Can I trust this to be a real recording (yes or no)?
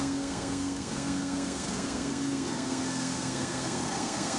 no